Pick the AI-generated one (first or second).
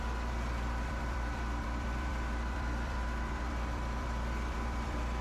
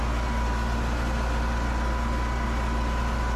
first